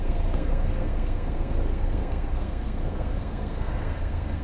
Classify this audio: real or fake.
fake